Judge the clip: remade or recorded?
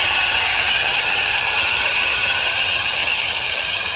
remade